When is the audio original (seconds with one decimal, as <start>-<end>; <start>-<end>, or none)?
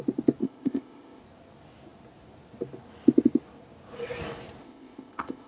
0.0-0.4; 1.2-4.6